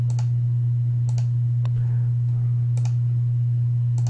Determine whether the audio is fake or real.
real